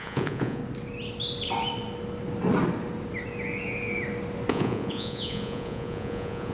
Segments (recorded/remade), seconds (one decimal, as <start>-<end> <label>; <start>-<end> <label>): 0.0-0.6 remade; 0.6-4.5 recorded; 4.5-6.5 remade